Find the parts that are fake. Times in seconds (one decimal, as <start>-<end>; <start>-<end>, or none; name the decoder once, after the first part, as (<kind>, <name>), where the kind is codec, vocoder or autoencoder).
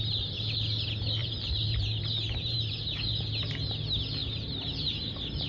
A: 1.2-3.2 (vocoder, BigVGAN v2); 4.2-5.5